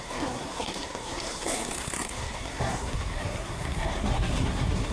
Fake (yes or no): yes